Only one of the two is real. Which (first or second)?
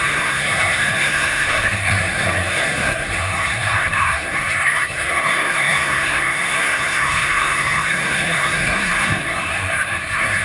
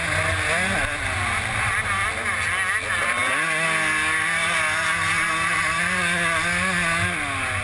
second